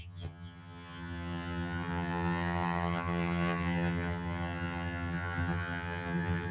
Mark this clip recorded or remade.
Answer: remade